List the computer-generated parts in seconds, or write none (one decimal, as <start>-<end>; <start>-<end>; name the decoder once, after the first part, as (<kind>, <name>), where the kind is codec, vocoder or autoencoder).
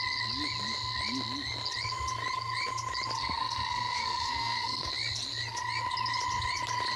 3.2-4.9 (codec, SNAC)